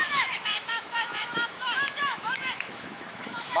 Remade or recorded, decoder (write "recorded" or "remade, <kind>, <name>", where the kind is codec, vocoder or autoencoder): remade, autoencoder, DAC-VAE